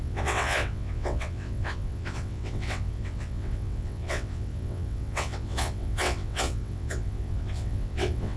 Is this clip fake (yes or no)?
yes